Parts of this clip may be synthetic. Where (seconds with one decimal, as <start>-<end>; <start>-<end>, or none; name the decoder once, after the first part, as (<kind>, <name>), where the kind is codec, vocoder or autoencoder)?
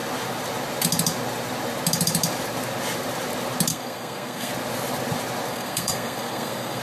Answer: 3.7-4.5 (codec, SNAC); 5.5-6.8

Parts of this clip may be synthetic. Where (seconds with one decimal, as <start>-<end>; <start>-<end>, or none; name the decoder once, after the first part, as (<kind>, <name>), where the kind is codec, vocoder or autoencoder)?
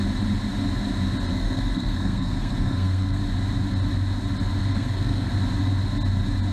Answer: 1.3-3.2 (codec, SNAC); 4.6-5.3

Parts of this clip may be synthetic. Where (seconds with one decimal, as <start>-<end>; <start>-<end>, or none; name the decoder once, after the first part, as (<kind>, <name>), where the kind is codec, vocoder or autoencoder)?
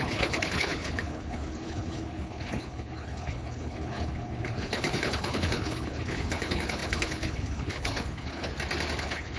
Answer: 0.0-8.5 (codec, HILCodec); 9.0-9.4